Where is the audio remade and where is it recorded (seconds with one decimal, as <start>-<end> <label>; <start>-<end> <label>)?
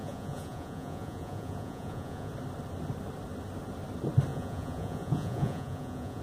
0.0-2.3 remade; 2.3-4.3 recorded; 4.3-6.2 remade